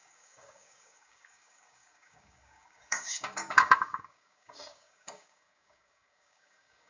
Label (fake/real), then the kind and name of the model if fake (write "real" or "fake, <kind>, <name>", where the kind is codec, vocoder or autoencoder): fake, codec, DAC